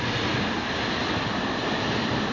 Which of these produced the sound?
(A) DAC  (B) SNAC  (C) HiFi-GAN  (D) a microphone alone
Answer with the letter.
D